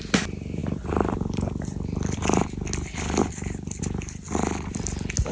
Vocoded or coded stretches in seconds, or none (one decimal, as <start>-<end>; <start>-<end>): none